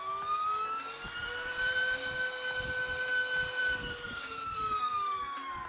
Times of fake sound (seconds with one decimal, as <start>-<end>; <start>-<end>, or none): 1.2-1.8; 3.6-4.6